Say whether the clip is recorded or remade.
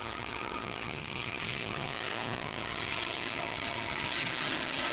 remade